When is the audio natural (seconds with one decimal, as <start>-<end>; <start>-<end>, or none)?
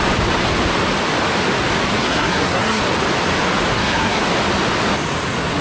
0.0-2.0; 2.8-3.7; 4.2-5.6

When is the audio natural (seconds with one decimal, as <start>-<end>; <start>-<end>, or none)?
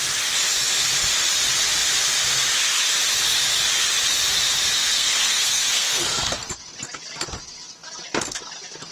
0.0-4.8; 6.3-8.9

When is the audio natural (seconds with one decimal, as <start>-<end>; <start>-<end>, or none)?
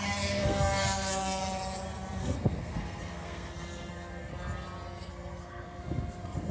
1.4-2.2; 4.3-5.1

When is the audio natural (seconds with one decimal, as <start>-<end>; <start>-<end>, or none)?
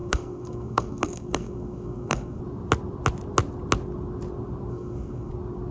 2.4-4.7; 5.3-5.7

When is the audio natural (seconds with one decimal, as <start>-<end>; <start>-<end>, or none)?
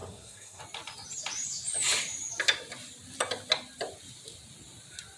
0.6-5.2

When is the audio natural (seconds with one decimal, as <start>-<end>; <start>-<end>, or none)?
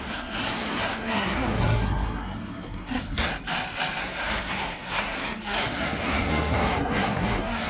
3.3-4.0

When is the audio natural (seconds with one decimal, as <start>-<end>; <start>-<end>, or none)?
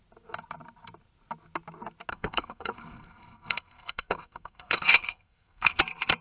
0.0-2.1; 5.8-6.2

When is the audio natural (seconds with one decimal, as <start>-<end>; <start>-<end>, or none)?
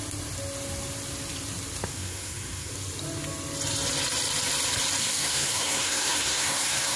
0.0-1.9; 2.7-5.0